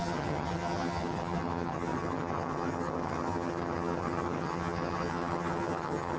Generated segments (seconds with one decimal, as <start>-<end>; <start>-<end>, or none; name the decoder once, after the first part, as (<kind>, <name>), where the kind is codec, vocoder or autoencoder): 0.0-6.2 (vocoder, HiFi-GAN)

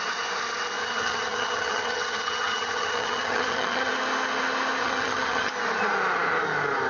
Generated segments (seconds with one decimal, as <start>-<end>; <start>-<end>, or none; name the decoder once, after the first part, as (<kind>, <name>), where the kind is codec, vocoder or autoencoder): 0.8-3.9 (vocoder, HiFi-GAN); 4.8-5.5

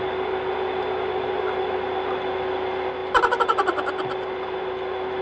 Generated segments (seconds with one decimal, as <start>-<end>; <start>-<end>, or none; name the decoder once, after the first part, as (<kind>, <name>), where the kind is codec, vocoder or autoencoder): none